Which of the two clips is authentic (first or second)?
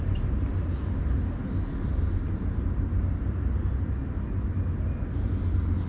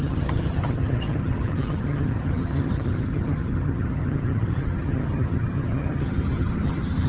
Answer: first